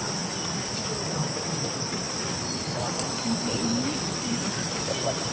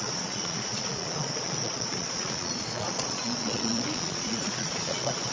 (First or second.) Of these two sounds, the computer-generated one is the second